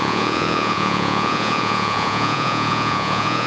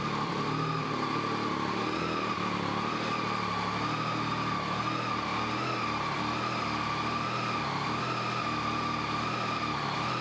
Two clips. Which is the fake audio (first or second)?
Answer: first